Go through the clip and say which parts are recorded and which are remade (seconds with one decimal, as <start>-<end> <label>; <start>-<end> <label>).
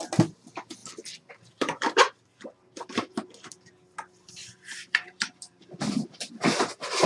0.0-0.8 recorded; 0.8-3.7 remade; 3.7-4.4 recorded; 4.4-6.4 remade; 6.4-7.1 recorded